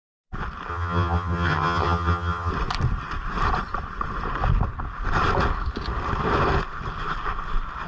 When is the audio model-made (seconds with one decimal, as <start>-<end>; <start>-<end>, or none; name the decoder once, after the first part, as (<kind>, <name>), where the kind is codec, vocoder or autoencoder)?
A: 0.7-2.5 (vocoder, HiFi-GAN)